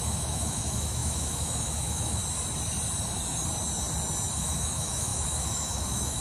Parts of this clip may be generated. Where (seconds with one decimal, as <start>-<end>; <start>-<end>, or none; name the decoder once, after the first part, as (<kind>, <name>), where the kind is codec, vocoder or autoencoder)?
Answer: 0.0-2.2 (autoencoder, DAC-VAE); 4.3-6.2